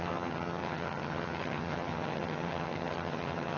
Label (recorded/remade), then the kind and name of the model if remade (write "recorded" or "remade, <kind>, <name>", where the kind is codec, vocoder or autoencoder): remade, vocoder, HiFi-GAN